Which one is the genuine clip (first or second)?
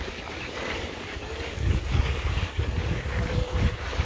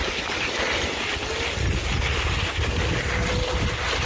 second